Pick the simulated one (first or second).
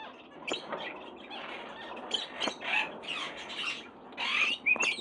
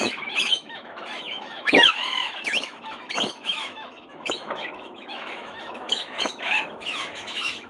second